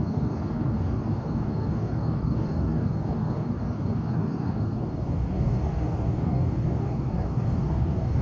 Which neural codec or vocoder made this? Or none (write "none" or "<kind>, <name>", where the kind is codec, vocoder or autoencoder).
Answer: codec, DAC